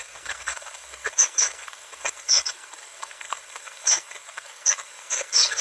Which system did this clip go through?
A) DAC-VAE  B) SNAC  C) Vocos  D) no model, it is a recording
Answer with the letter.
B